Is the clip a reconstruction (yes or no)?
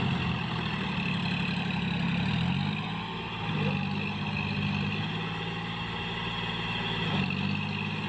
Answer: no